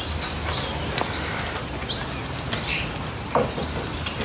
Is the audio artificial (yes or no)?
no